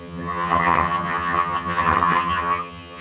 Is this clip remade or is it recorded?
remade